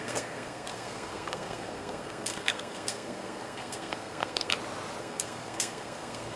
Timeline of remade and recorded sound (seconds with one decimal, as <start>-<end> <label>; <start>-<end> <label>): 0.0-4.5 remade; 4.5-5.0 recorded; 5.0-6.4 remade

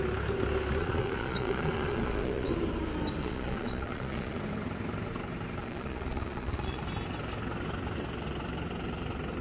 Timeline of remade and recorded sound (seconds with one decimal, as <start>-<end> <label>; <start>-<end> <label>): 0.0-0.8 recorded; 0.8-2.5 remade; 2.5-3.2 recorded; 3.2-4.4 remade; 4.4-5.6 recorded; 5.6-6.8 remade; 6.8-9.4 recorded

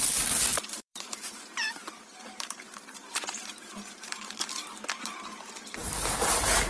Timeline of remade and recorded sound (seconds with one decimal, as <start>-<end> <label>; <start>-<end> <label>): 0.0-0.5 recorded; 0.5-4.5 remade; 4.5-6.7 recorded

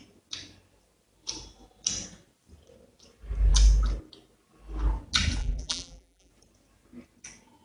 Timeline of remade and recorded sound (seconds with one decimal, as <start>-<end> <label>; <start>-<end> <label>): 0.0-5.4 recorded; 5.4-6.3 remade; 6.3-7.6 recorded